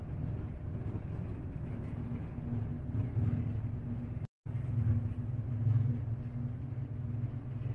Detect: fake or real real